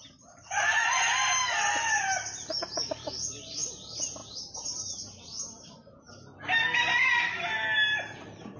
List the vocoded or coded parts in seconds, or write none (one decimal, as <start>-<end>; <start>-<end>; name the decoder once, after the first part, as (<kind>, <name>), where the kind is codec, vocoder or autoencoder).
none